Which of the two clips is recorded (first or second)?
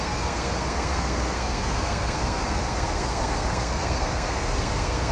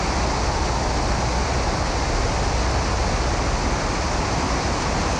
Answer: second